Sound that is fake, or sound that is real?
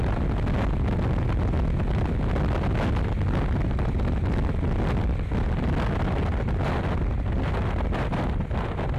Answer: real